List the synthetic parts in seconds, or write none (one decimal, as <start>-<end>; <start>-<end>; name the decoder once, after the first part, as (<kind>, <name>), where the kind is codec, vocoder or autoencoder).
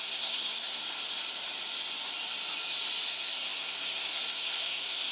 0.0-0.8 (codec, SNAC); 3.1-5.1